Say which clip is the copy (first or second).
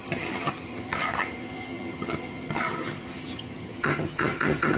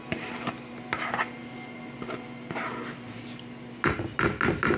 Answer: first